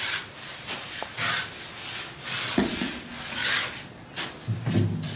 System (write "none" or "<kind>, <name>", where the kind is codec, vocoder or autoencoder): none